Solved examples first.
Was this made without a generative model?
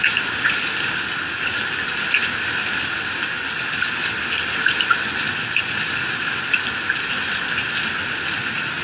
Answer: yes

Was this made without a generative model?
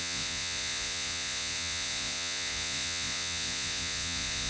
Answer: no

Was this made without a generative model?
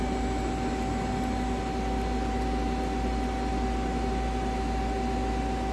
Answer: yes